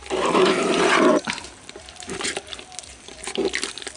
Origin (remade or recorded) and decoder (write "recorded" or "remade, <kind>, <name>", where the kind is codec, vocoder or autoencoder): recorded